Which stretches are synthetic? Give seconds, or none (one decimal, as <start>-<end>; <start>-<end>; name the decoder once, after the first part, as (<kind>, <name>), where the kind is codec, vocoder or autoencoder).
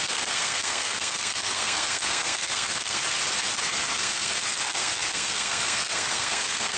0.0-3.0 (codec, SNAC); 3.6-6.8